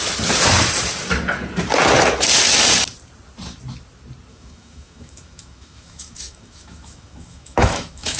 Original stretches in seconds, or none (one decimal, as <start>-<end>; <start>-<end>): 0.0-4.3